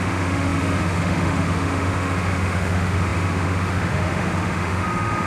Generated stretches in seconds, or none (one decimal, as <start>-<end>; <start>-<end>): 0.0-5.3